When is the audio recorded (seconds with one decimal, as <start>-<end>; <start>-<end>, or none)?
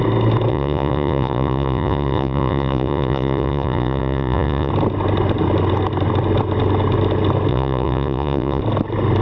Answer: 0.0-0.5; 4.7-7.5; 8.6-9.2